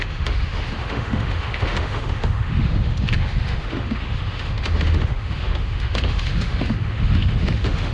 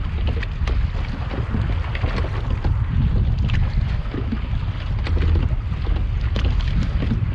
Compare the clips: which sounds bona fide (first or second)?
second